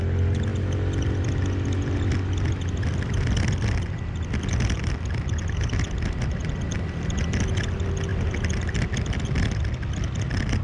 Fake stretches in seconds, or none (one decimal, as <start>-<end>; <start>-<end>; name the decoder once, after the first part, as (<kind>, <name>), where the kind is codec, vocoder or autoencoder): none